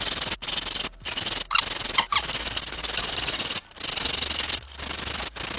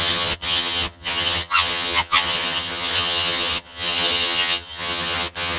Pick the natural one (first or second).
first